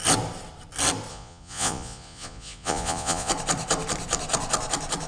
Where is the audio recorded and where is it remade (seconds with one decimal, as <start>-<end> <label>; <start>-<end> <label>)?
0.0-1.1 recorded; 1.1-3.3 remade; 3.3-5.1 recorded

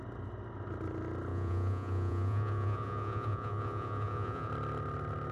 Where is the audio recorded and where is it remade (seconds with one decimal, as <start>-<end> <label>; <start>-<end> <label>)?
0.0-1.3 recorded; 1.3-4.5 remade; 4.5-5.3 recorded

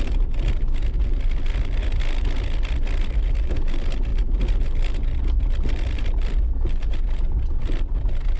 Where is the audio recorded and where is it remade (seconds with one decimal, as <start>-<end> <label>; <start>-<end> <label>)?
0.0-8.4 recorded

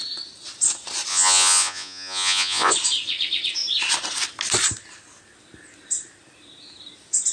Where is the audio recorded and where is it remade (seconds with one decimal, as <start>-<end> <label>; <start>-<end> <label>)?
0.0-1.1 recorded; 1.1-2.7 remade; 2.7-7.3 recorded